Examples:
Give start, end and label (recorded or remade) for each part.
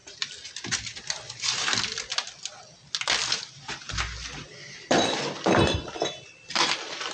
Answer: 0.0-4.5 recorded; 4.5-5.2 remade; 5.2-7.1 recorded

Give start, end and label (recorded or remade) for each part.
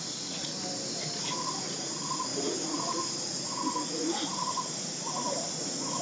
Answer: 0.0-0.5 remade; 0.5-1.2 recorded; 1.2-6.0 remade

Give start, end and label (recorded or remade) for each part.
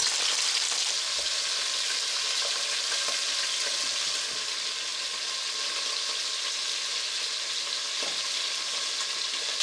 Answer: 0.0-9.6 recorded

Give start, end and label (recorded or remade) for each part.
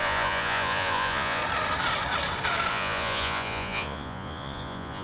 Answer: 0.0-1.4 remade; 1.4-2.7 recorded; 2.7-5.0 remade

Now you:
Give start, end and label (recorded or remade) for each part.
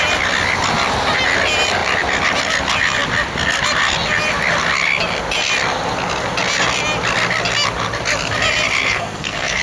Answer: 0.0-8.8 recorded; 8.8-9.6 remade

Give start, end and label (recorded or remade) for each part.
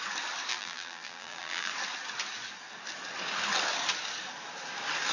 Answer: 0.0-0.5 recorded; 0.5-1.7 remade; 1.7-5.1 recorded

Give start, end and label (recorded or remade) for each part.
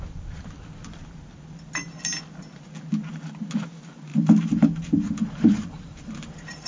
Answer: 0.0-4.1 recorded; 4.1-6.7 remade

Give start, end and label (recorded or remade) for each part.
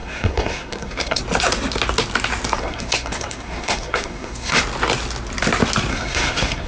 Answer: 0.0-1.2 remade; 1.2-2.6 recorded; 2.6-4.6 remade; 4.6-5.9 recorded; 5.9-6.7 remade